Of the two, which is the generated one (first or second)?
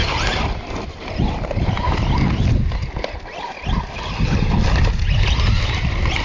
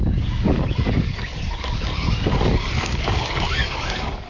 second